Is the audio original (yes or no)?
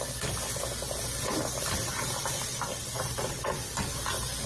yes